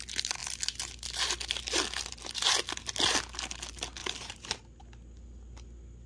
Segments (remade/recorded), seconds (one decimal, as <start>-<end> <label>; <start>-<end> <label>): 0.0-4.0 recorded; 4.0-4.6 remade; 4.6-6.1 recorded